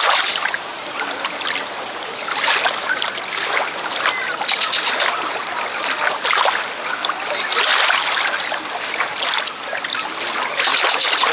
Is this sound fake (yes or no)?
no